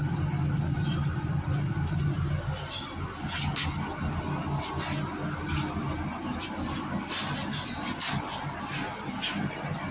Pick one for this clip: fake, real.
real